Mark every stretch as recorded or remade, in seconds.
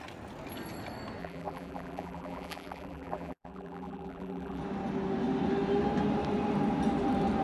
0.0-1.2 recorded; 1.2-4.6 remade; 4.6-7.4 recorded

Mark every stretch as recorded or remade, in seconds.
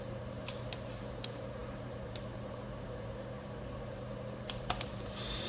0.0-5.5 remade